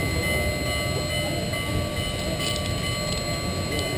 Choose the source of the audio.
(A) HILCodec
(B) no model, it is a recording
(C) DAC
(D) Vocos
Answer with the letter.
B